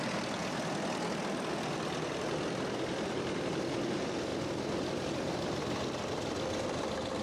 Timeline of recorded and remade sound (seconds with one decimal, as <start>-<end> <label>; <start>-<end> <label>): 0.0-0.4 remade; 0.4-1.5 recorded; 1.5-4.3 remade; 4.3-6.6 recorded; 6.6-7.2 remade